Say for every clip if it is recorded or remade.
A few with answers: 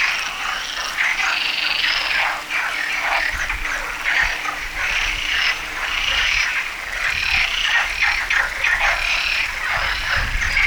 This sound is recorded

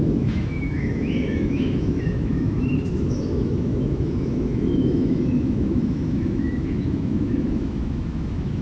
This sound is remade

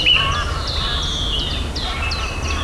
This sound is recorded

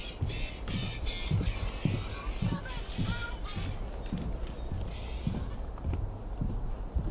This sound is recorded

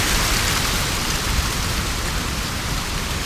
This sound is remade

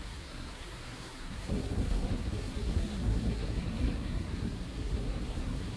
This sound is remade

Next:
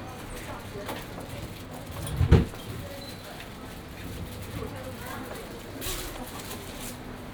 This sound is recorded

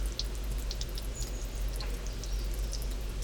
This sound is recorded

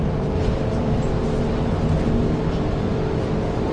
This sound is recorded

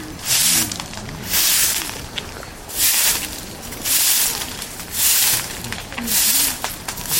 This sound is remade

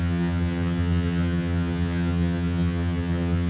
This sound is remade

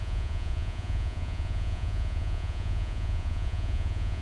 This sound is remade